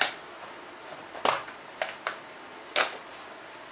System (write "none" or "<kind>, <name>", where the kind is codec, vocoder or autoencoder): none